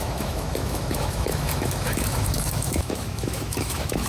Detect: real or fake fake